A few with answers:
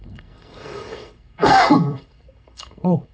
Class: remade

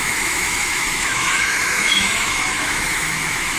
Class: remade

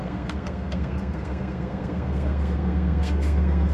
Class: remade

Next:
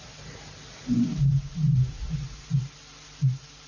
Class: recorded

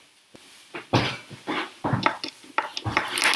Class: recorded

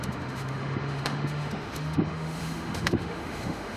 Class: remade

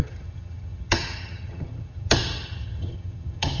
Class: remade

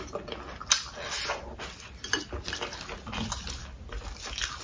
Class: recorded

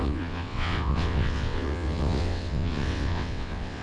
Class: remade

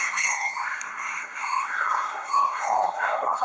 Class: remade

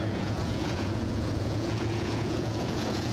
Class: remade